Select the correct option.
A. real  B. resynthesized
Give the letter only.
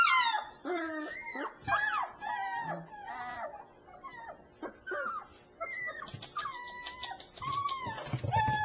A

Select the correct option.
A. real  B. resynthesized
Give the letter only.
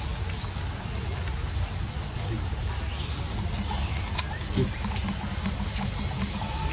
A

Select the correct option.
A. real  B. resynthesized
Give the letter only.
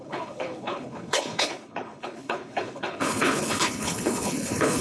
B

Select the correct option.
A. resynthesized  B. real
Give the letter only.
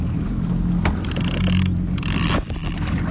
B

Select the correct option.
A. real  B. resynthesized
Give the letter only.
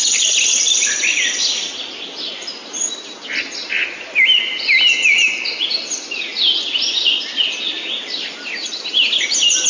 A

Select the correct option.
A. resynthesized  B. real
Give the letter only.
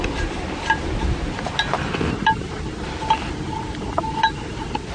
B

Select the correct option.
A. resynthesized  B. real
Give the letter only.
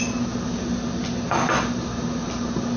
B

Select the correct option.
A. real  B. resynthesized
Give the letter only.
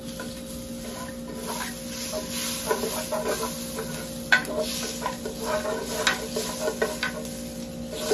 A